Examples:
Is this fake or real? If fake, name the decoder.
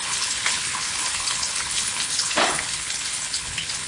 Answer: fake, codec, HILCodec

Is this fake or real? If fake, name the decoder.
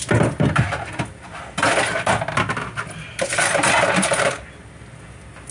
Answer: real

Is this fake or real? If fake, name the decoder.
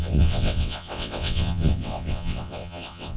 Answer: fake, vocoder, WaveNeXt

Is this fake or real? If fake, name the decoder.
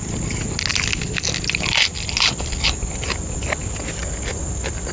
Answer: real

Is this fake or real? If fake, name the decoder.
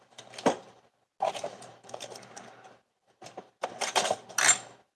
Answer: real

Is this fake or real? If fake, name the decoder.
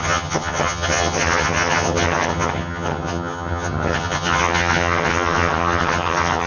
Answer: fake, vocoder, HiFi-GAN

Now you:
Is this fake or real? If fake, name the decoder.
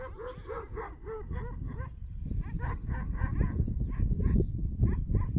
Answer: real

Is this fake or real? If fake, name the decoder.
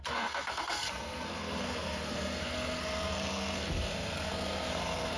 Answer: fake, codec, SNAC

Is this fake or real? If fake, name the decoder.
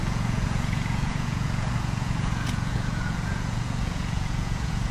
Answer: fake, vocoder, Vocos